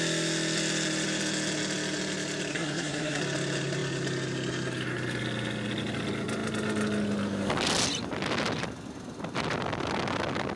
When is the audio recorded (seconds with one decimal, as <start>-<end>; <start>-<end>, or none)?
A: 0.0-2.5; 3.2-10.6